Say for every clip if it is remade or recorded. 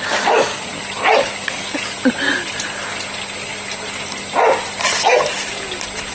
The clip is recorded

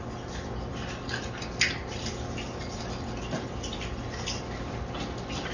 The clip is recorded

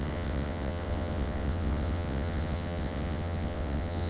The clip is remade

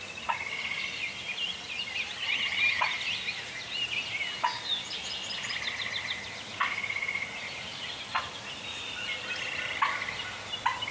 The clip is recorded